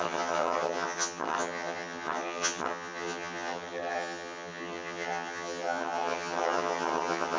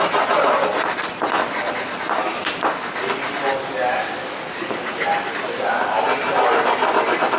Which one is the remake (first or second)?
first